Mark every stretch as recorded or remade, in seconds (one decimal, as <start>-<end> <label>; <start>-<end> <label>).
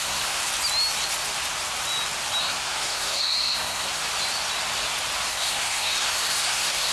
0.0-0.4 remade; 0.4-2.4 recorded; 2.4-4.0 remade; 4.0-5.3 recorded; 5.3-6.9 remade